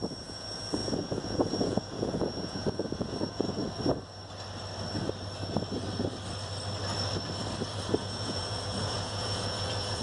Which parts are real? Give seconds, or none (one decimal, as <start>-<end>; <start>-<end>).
3.6-8.0